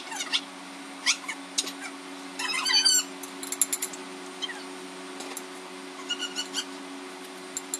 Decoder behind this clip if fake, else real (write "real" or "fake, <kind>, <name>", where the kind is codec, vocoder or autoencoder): real